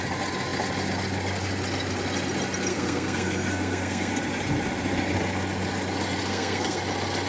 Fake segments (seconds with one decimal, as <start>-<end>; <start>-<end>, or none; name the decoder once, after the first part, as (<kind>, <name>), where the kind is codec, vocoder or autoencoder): 2.7-4.1 (codec, SNAC); 6.3-6.8